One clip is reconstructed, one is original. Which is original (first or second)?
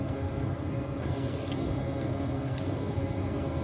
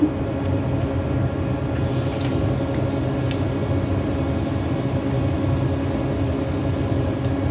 second